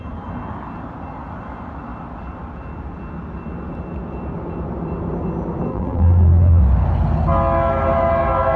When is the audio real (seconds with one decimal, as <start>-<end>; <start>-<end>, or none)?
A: 0.0-5.7; 6.6-8.6